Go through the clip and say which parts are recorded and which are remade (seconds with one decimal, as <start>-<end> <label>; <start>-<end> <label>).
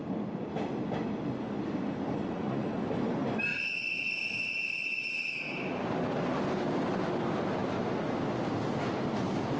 0.0-2.2 recorded; 2.2-2.8 remade; 2.8-3.5 recorded; 3.5-4.1 remade; 4.1-9.6 recorded